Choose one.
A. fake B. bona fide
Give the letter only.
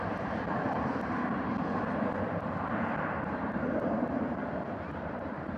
A